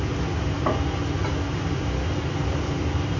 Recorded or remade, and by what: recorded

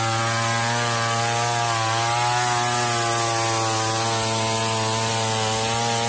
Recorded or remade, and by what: recorded